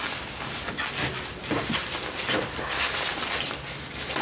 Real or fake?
real